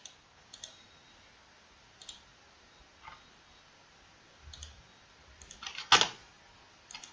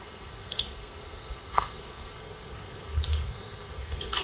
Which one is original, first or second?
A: first